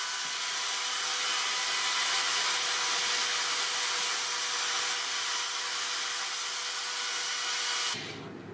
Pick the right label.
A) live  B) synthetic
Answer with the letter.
A